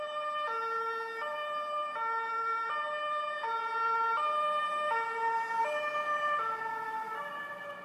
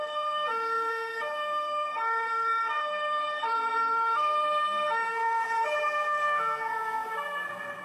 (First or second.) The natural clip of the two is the first